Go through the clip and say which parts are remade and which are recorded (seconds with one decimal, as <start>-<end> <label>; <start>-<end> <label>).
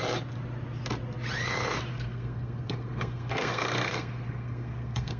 0.0-1.9 recorded; 1.9-5.2 remade